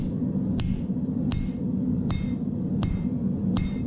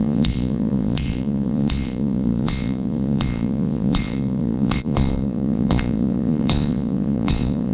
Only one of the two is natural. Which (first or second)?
first